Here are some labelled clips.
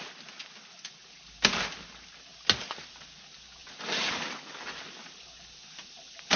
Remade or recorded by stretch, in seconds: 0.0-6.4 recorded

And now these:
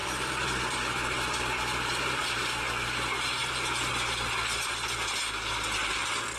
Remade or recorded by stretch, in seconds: 0.0-2.9 remade; 2.9-6.4 recorded

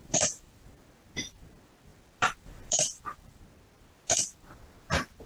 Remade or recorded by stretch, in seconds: 0.0-0.7 remade; 0.7-1.9 recorded; 1.9-3.4 remade; 3.4-5.3 recorded